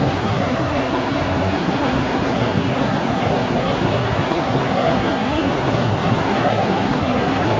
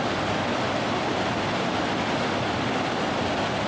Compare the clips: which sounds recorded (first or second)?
second